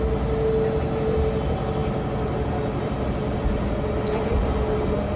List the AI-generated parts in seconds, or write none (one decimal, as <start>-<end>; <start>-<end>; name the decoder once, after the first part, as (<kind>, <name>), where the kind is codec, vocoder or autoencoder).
none